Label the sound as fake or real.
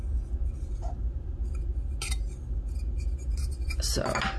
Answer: real